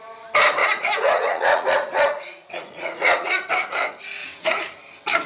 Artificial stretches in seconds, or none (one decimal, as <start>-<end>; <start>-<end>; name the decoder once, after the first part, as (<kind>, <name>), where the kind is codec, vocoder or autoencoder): 0.6-3.5 (vocoder, Vocos); 4.2-4.8